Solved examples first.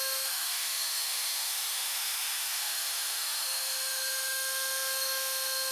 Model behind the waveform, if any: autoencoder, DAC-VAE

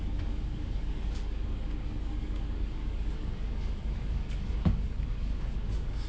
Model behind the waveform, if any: codec, DAC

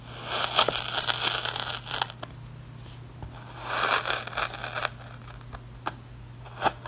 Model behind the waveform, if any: none